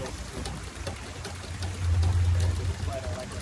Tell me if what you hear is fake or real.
real